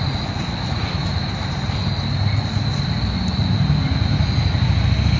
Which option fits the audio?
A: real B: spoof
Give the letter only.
A